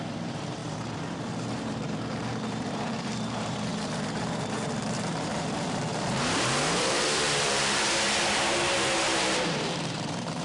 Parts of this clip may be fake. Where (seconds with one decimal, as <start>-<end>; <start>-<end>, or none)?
0.0-10.4